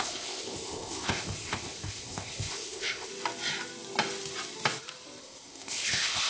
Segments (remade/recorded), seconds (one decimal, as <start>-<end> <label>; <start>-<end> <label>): 0.0-3.1 remade; 3.1-5.2 recorded; 5.2-6.3 remade